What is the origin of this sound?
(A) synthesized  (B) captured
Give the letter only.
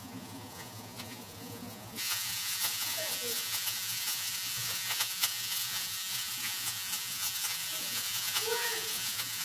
A